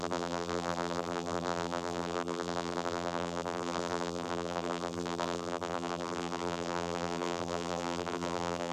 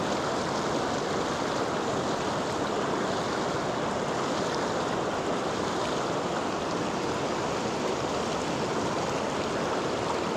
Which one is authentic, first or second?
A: second